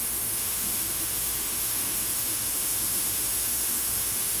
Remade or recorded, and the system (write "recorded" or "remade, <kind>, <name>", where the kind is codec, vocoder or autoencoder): remade, autoencoder, DAC-VAE